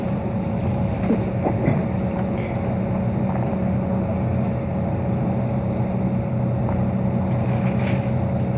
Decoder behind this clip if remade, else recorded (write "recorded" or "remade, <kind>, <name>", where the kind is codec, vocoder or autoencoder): recorded